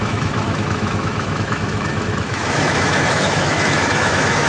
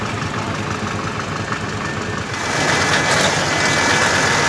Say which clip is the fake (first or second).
first